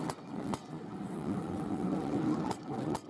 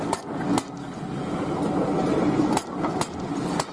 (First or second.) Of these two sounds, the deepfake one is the first